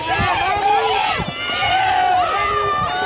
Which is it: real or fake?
real